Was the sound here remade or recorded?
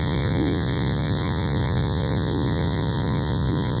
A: remade